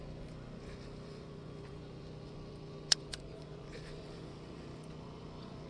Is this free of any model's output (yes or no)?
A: no